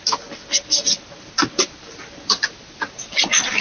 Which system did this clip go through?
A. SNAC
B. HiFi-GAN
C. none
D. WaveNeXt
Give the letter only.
C